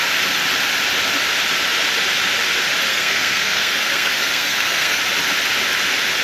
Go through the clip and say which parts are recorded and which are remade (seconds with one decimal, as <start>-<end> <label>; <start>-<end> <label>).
0.0-2.9 recorded; 2.9-5.0 remade; 5.0-6.2 recorded